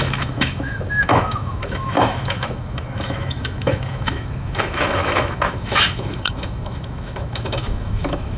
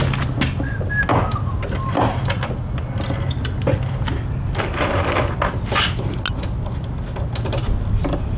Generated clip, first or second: first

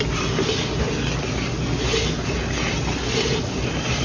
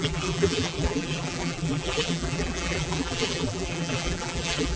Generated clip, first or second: second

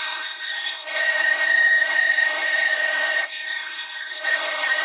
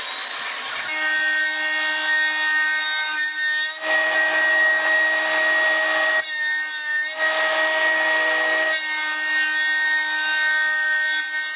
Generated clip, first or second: first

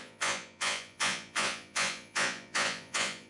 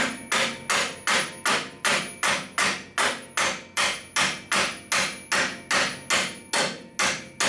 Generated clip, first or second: first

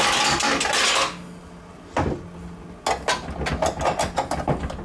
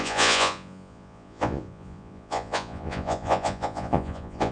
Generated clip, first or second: second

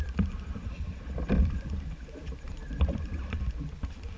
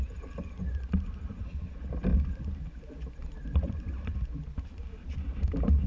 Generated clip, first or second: first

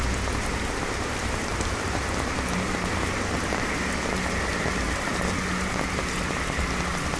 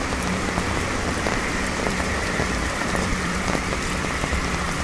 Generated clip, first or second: second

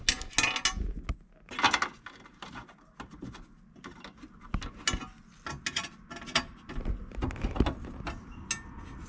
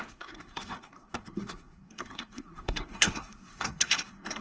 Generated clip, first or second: second